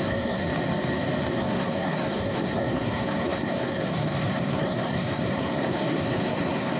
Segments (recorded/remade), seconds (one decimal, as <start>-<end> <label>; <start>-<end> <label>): 0.0-0.4 remade; 0.4-1.3 recorded; 1.3-6.8 remade